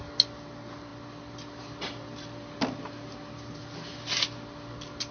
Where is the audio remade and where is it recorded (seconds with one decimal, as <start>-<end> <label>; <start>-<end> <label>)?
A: 0.0-5.1 recorded